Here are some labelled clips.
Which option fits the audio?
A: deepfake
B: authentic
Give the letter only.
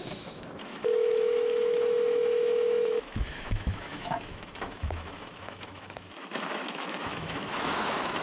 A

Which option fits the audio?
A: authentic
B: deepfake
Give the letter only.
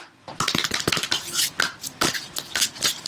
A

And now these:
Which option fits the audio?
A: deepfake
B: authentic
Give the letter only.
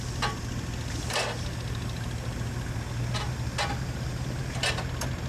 B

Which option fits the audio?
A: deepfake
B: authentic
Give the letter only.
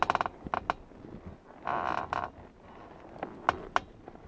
B